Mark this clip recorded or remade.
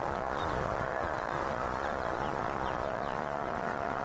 remade